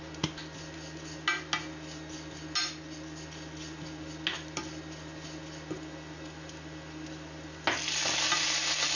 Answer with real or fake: real